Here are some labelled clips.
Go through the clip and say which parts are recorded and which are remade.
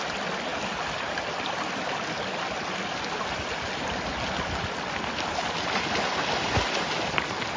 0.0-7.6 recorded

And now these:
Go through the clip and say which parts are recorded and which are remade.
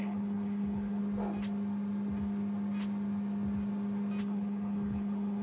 0.0-1.0 remade; 1.0-4.2 recorded; 4.2-5.4 remade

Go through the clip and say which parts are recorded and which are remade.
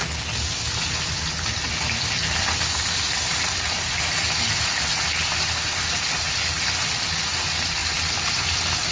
0.0-8.9 recorded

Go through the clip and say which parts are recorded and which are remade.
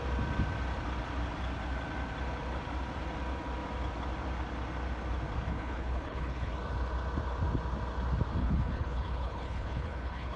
0.0-5.5 recorded; 5.5-6.5 remade; 6.5-8.4 recorded; 8.4-10.4 remade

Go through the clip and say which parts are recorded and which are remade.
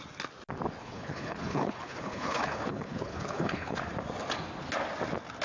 0.0-0.8 recorded; 0.8-3.8 remade; 3.8-5.4 recorded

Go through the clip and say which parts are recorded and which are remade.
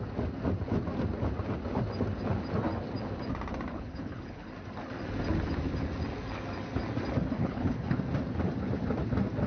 0.0-3.7 recorded; 3.7-4.5 remade; 4.5-7.4 recorded; 7.4-8.0 remade; 8.0-9.5 recorded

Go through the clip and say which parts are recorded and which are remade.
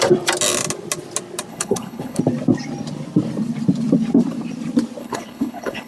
0.0-1.5 recorded; 1.5-2.2 remade; 2.2-5.0 recorded; 5.0-5.9 remade